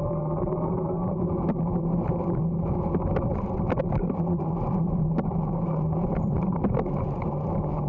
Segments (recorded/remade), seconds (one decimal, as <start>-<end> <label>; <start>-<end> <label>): 0.0-2.4 remade; 2.4-3.8 recorded; 3.8-7.9 remade